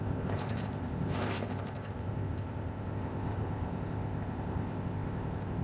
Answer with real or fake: fake